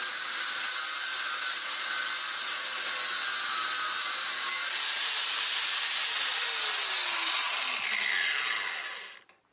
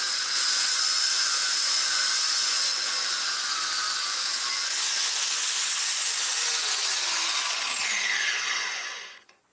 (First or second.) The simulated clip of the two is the second